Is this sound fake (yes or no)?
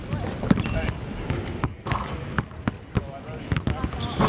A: no